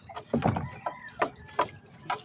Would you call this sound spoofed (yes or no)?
no